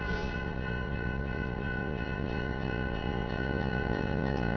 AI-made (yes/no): yes